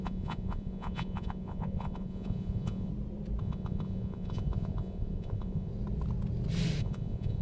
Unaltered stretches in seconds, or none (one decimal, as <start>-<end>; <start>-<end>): 2.9-3.4; 5.7-6.8